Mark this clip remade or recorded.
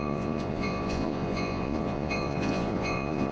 remade